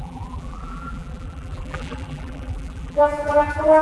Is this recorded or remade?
remade